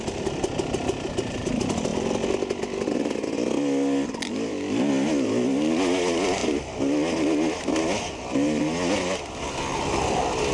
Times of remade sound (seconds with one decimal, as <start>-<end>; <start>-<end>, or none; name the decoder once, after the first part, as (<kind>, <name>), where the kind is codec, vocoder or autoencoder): none